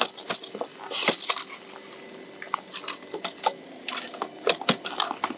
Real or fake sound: real